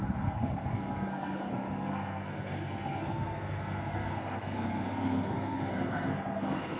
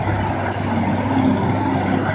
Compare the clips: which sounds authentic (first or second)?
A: second